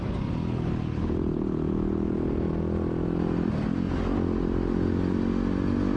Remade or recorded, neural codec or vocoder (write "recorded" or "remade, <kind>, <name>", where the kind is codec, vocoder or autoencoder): recorded